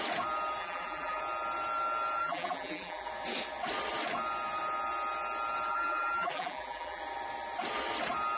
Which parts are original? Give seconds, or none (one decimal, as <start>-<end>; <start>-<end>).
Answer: 0.0-0.6; 1.2-2.2; 3.1-5.7; 7.0-8.4